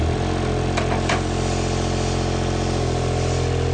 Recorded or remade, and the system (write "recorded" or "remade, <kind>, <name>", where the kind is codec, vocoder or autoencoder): recorded